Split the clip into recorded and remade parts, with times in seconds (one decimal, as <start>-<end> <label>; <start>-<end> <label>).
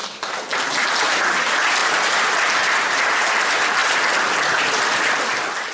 0.0-5.7 recorded